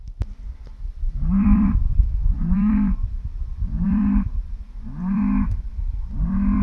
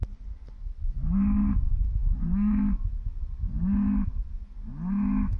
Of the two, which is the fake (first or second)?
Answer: first